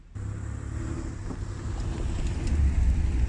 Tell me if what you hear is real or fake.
real